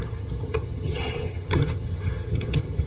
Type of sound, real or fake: fake